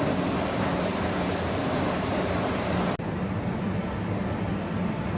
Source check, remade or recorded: recorded